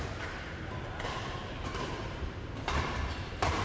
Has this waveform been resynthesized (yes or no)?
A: yes